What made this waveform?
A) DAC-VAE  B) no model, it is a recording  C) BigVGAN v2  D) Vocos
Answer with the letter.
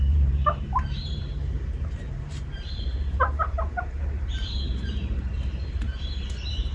C